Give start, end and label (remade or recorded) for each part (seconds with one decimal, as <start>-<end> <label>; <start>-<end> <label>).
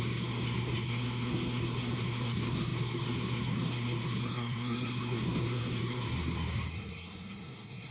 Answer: 0.0-7.9 remade